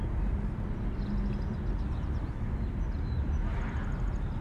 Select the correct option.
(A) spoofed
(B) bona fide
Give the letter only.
B